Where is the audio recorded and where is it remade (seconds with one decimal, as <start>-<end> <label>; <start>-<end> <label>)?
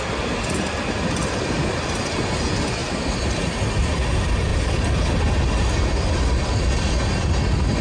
0.0-2.8 recorded; 2.8-4.1 remade; 4.1-7.8 recorded